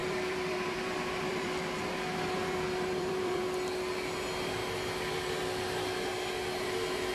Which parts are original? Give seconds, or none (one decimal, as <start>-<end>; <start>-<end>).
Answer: 3.4-7.1